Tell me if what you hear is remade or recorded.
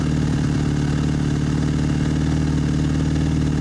recorded